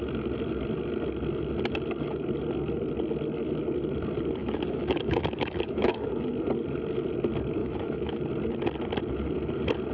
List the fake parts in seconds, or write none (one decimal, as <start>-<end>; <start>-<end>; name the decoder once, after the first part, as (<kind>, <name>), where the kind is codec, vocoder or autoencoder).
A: 4.4-6.1 (autoencoder, DAC-VAE); 7.6-8.2